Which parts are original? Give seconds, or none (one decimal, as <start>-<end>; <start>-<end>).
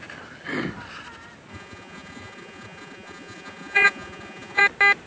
0.0-1.5; 4.6-5.1